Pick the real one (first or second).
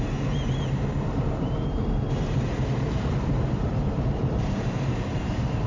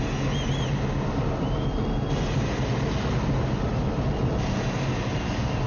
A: second